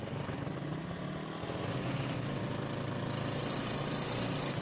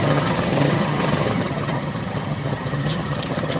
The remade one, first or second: second